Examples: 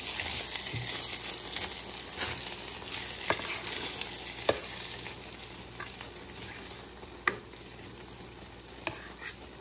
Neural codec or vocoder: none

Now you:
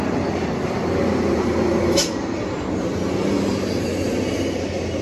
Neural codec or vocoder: none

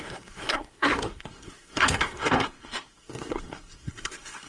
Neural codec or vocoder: codec, SNAC